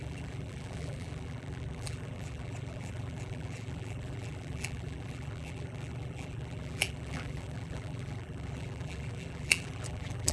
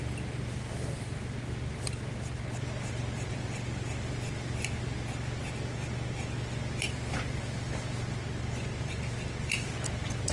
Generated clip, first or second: first